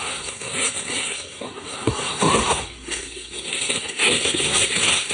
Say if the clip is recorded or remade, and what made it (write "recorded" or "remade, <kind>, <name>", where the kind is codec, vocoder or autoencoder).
remade, codec, SNAC